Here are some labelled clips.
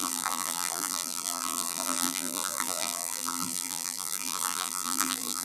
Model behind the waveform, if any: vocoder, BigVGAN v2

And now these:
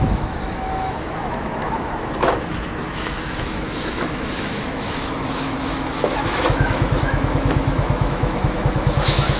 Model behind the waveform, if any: autoencoder, DAC-VAE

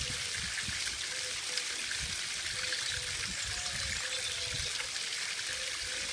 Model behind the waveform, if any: none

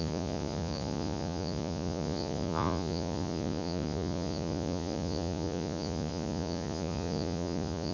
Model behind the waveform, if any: vocoder, Vocos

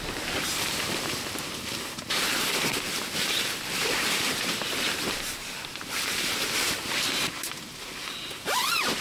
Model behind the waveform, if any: vocoder, BigVGAN v2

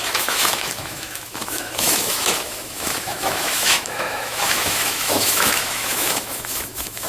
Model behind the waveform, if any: autoencoder, DAC-VAE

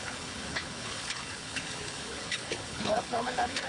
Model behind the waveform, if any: codec, HILCodec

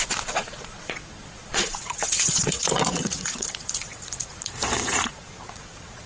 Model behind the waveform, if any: vocoder, Vocos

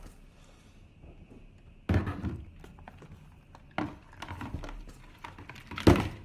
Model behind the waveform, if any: none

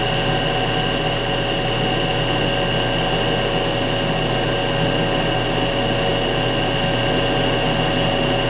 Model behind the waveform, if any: none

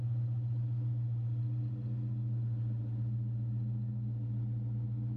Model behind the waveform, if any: none